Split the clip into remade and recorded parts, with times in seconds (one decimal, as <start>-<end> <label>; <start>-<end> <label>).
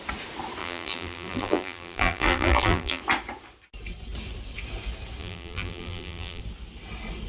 0.0-0.6 recorded; 0.6-3.0 remade; 3.0-5.2 recorded; 5.2-6.4 remade; 6.4-7.3 recorded